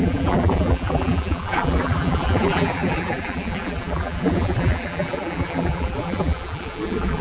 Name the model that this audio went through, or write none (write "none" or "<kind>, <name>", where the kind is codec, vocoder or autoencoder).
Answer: vocoder, BigVGAN v2